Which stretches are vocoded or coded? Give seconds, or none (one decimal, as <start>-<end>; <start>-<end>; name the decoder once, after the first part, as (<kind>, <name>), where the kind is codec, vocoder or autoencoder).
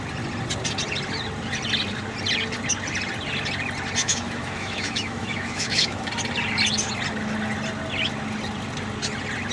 4.0-6.1 (autoencoder, DAC-VAE)